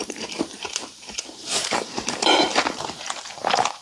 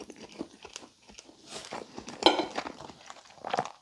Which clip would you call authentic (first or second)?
second